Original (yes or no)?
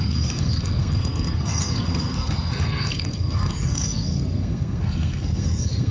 no